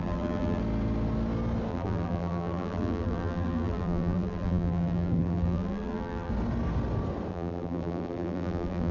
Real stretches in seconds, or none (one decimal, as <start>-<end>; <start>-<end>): 0.6-1.7; 6.3-7.3